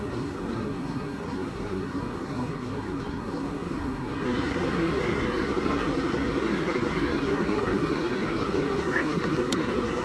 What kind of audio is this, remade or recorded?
remade